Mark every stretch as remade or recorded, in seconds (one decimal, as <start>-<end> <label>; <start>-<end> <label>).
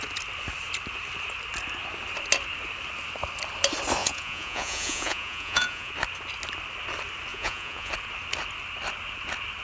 0.0-4.0 recorded; 4.0-5.9 remade; 5.9-7.3 recorded; 7.3-7.9 remade; 7.9-9.6 recorded